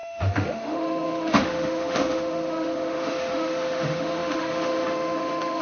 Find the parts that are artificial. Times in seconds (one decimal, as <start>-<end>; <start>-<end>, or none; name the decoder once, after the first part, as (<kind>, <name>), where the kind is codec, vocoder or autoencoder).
0.0-5.6 (autoencoder, DAC-VAE)